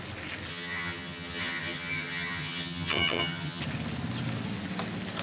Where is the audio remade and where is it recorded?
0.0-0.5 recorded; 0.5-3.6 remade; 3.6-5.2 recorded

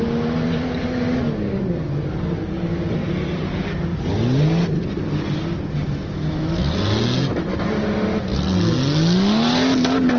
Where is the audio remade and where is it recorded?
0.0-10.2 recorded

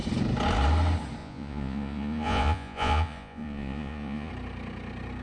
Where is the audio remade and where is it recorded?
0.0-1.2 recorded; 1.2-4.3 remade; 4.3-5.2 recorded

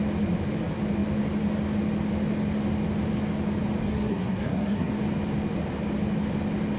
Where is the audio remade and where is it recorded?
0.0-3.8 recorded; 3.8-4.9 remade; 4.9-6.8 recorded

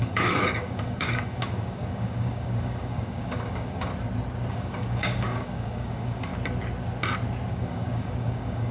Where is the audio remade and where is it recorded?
0.0-3.9 remade; 3.9-4.5 recorded; 4.5-6.3 remade; 6.3-7.5 recorded; 7.5-8.7 remade

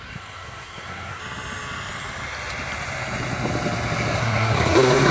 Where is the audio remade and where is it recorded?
0.0-1.2 remade; 1.2-4.2 recorded; 4.2-5.1 remade

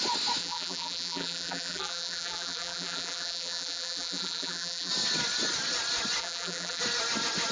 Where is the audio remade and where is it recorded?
0.0-0.4 recorded; 0.4-4.9 remade; 4.9-6.2 recorded; 6.2-6.8 remade; 6.8-7.5 recorded